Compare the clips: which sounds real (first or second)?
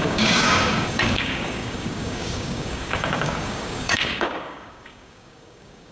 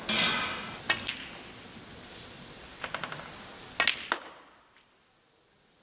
second